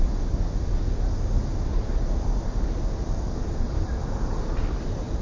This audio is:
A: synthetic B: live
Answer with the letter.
B